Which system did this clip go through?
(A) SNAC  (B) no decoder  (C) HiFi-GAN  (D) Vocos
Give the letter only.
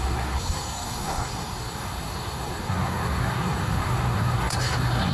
A